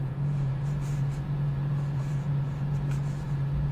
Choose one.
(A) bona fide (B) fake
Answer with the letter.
B